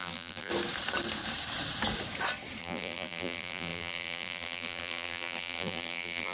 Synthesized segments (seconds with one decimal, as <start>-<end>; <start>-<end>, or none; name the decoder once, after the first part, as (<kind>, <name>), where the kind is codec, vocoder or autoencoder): 0.0-0.5 (vocoder, BigVGAN v2); 2.6-6.3